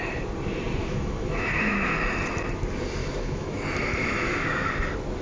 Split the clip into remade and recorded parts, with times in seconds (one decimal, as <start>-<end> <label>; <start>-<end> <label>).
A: 0.0-0.8 recorded; 0.8-1.9 remade; 1.9-3.0 recorded; 3.0-3.6 remade; 3.6-4.0 recorded; 4.0-4.7 remade; 4.7-5.2 recorded

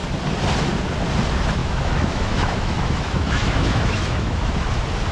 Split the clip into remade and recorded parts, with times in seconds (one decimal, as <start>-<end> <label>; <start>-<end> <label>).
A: 0.0-1.6 recorded; 1.6-4.5 remade; 4.5-5.1 recorded

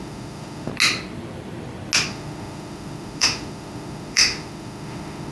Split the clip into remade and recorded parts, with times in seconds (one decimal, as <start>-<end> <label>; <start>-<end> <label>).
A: 0.0-0.7 remade; 0.7-2.1 recorded; 2.1-5.3 remade

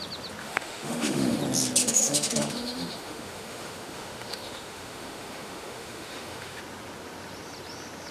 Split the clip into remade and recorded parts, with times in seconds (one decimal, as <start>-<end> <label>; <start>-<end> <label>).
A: 0.0-0.4 recorded; 0.4-1.4 remade; 1.4-1.8 recorded; 1.8-6.6 remade; 6.6-8.1 recorded

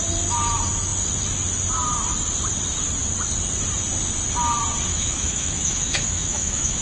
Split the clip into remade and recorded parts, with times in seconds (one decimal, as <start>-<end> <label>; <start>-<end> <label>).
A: 0.0-4.9 recorded; 4.9-6.8 remade